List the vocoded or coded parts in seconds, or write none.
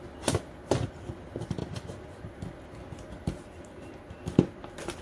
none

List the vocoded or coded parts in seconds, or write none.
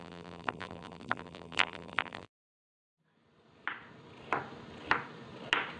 0.0-2.8 (vocoder, BigVGAN v2)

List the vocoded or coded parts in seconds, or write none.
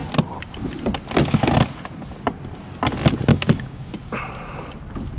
3.3-3.9 (codec, DAC)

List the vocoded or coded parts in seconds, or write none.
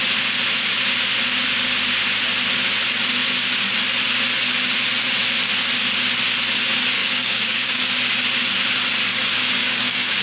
7.0-7.8 (codec, DAC); 9.1-10.2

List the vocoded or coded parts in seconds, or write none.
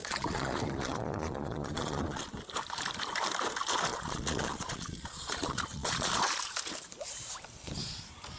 0.0-2.3 (vocoder, Vocos); 3.9-6.1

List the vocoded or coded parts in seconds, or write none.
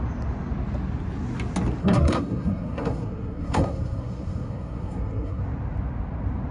1.8-5.4 (codec, SNAC)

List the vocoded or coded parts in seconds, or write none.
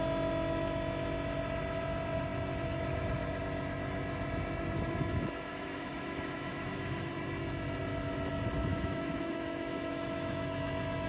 5.5-7.1 (autoencoder, DAC-VAE); 8.7-11.1